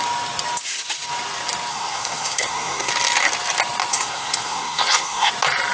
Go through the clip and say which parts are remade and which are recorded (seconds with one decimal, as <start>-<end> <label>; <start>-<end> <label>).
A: 0.0-1.7 recorded; 1.7-2.9 remade; 2.9-3.9 recorded; 3.9-5.3 remade; 5.3-5.7 recorded